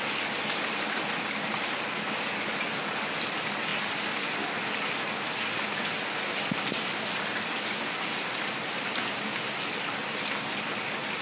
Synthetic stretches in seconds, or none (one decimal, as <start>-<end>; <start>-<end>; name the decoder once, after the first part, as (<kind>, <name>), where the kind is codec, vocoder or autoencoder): none